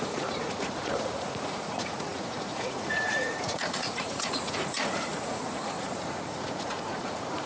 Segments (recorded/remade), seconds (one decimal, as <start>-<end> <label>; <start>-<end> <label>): 0.0-7.5 remade